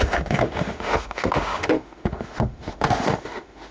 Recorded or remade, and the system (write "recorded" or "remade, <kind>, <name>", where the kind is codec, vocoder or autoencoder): remade, autoencoder, DAC-VAE